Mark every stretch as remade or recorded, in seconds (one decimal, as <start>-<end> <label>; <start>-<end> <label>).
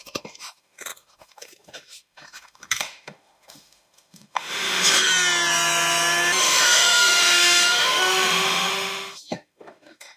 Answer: 0.0-5.1 remade; 5.1-6.4 recorded; 6.4-10.2 remade